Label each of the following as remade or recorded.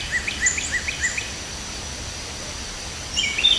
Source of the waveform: recorded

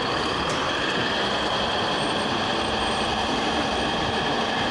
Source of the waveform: remade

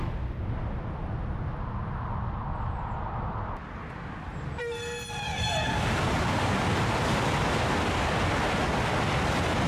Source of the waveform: recorded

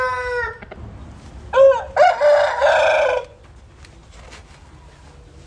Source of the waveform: recorded